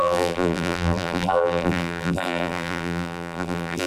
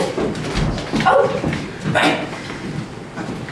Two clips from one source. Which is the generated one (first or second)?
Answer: first